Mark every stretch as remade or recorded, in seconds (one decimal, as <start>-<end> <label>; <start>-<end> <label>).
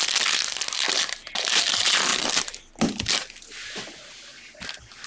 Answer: 0.0-5.1 recorded